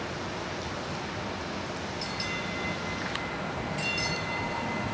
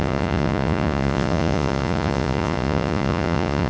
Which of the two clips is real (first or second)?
first